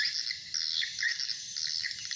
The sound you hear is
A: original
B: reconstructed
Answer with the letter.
A